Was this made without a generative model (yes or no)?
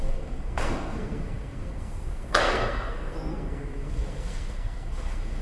no